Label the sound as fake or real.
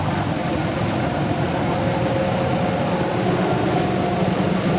real